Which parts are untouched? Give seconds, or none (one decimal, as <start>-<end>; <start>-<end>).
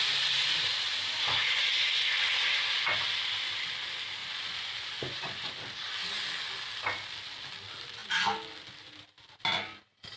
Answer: 0.0-4.2; 5.6-10.2